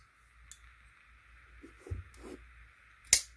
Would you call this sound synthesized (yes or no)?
no